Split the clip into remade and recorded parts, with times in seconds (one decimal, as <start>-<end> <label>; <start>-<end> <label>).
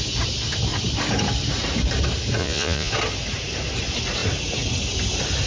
0.0-2.4 recorded; 2.4-2.9 remade; 2.9-5.5 recorded